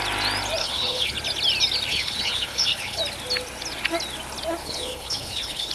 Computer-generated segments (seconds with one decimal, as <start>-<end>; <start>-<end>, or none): 0.6-1.2; 1.9-3.0; 4.6-5.7